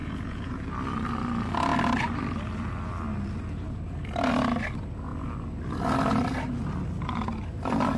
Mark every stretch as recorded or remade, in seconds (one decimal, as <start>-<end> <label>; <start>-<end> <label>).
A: 0.0-0.7 remade; 0.7-8.0 recorded